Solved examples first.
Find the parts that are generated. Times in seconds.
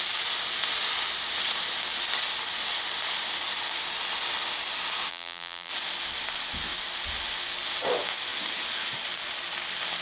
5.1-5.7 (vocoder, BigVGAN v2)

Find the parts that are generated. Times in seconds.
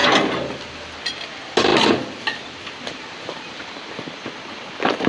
none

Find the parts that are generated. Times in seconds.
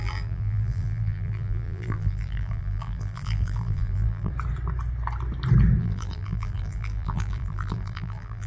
0.0-4.3 (vocoder, BigVGAN v2); 5.8-8.5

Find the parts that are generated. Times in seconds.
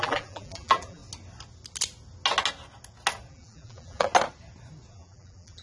0.0-1.0 (vocoder, BigVGAN v2); 3.3-4.1; 4.9-5.6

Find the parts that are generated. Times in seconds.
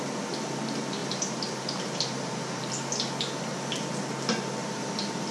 1.0-2.7 (vocoder, BigVGAN v2); 4.6-5.3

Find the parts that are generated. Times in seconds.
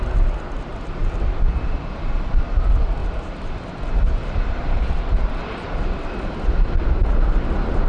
3.0-6.6 (vocoder, BigVGAN v2)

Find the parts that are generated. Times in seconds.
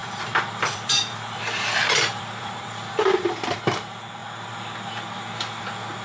0.0-3.6 (vocoder, BigVGAN v2)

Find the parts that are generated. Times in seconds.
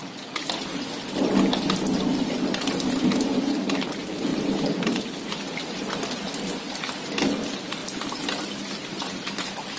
4.3-6.6 (vocoder, BigVGAN v2)